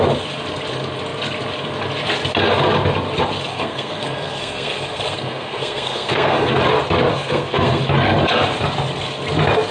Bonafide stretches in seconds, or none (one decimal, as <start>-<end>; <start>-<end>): 0.0-3.5; 6.6-7.1; 7.8-9.7